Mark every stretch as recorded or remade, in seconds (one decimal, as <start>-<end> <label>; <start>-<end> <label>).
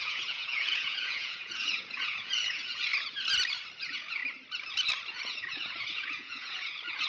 0.0-2.9 remade; 2.9-3.8 recorded; 3.8-4.2 remade; 4.2-5.1 recorded; 5.1-7.1 remade